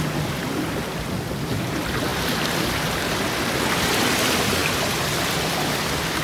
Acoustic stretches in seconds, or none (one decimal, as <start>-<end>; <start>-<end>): 0.0-6.2